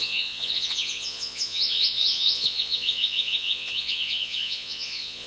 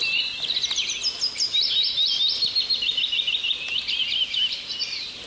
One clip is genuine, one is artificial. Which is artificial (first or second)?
first